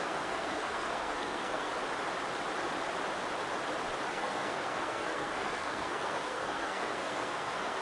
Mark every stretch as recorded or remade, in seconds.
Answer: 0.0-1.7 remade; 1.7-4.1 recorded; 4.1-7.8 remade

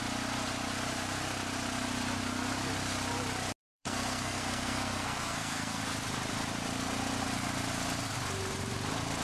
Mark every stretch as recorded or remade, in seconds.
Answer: 0.0-3.6 recorded; 3.6-5.8 remade; 5.8-9.2 recorded